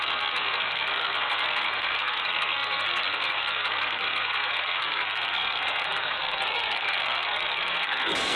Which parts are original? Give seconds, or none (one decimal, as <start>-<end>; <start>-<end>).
none